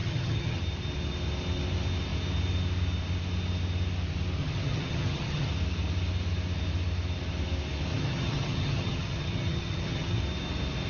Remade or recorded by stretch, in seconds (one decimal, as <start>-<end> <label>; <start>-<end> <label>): 0.0-0.6 remade; 0.6-4.4 recorded; 4.4-5.5 remade; 5.5-7.9 recorded; 7.9-10.2 remade; 10.2-10.9 recorded